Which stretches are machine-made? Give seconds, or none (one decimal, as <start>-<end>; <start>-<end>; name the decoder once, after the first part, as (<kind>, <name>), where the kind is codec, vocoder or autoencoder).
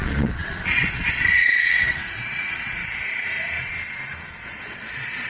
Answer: 0.0-2.8 (vocoder, Vocos); 4.3-5.3